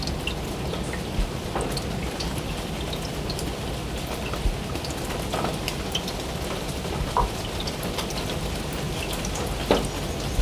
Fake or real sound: real